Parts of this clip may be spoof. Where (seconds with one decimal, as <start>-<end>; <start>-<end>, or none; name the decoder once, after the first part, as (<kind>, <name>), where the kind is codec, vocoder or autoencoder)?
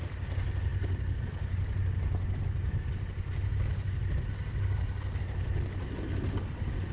none